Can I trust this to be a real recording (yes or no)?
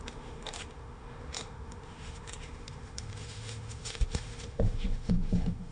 no